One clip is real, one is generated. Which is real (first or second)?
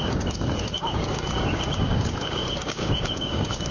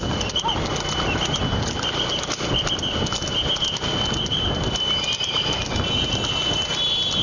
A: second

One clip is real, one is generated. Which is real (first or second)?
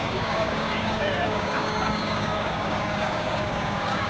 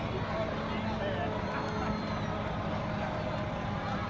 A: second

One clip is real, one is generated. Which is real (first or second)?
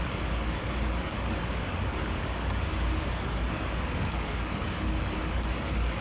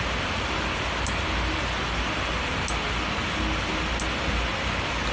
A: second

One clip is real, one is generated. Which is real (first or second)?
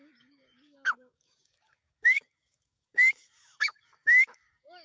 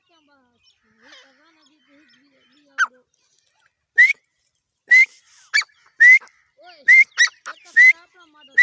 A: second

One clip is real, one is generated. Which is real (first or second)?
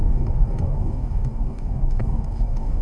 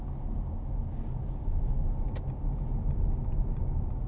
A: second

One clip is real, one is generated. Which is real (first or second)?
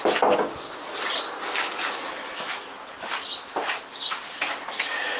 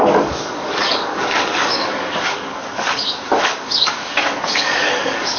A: first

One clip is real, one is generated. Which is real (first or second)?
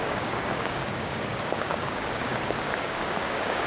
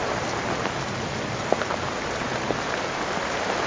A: second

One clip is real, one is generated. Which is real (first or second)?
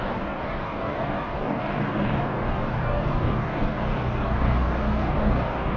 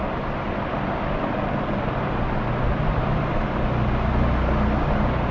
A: second